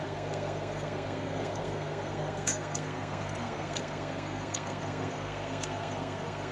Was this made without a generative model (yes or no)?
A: no